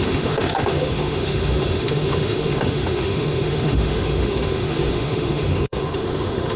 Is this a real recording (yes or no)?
no